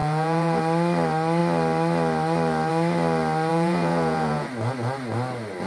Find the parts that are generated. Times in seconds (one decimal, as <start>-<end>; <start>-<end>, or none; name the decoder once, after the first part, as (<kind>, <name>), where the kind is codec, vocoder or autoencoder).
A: 0.0-0.6 (vocoder, Vocos); 3.5-4.5